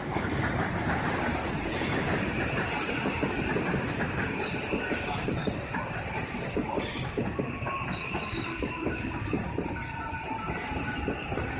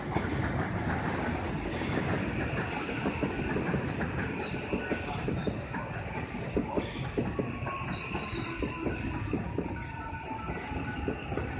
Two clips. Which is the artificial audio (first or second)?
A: first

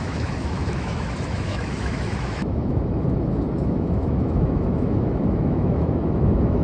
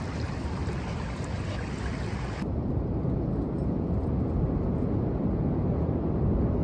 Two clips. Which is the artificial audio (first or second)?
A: first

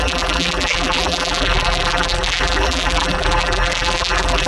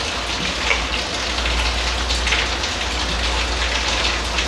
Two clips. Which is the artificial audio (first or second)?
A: first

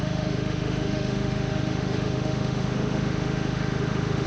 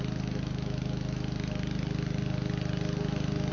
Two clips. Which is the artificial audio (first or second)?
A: first